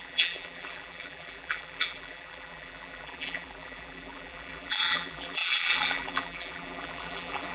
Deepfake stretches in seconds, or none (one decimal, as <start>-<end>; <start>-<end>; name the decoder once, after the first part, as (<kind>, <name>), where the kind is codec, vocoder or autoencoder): 0.0-7.5 (vocoder, BigVGAN v2)